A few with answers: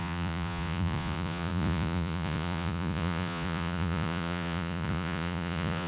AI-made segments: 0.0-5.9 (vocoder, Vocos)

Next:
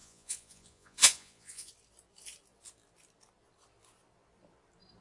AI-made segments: 0.0-1.7 (vocoder, Vocos)

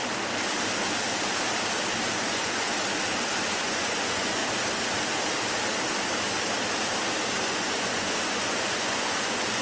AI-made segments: 2.1-2.7 (vocoder, Vocos); 3.5-4.4; 7.4-9.6

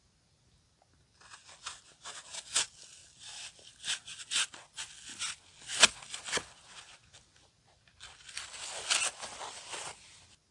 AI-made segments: none

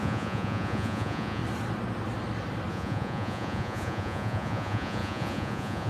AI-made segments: 0.0-1.4 (vocoder, Vocos); 2.7-5.9